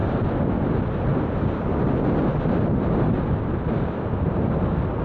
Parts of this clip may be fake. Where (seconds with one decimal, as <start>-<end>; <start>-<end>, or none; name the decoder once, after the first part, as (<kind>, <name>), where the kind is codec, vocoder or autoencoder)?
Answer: none